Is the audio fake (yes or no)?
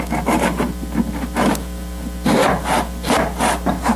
no